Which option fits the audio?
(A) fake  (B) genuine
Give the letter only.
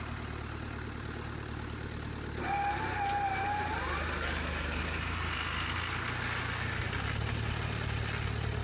B